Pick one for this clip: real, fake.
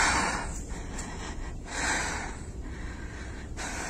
real